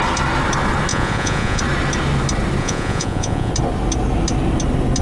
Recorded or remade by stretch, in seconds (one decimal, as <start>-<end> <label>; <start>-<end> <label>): 0.0-0.9 recorded; 0.9-1.6 remade; 1.6-2.6 recorded; 2.6-3.5 remade; 3.5-5.0 recorded